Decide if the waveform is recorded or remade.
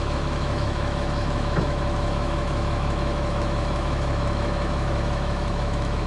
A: remade